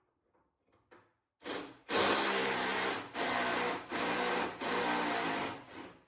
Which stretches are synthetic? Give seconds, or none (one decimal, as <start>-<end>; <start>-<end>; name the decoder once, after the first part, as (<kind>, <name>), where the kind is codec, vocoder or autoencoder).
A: 2.4-3.5 (vocoder, BigVGAN v2); 3.9-4.8